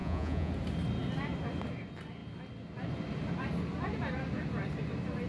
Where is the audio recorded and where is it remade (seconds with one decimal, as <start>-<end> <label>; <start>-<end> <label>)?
0.0-0.5 remade; 0.5-5.3 recorded